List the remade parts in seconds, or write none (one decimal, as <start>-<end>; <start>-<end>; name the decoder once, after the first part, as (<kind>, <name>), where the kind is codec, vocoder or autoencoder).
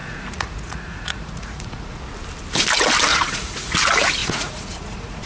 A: 0.0-2.0 (vocoder, Vocos); 3.1-3.7; 4.2-5.3